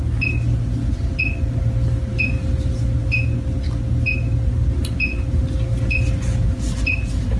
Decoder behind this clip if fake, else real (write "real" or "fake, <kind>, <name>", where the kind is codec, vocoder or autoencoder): real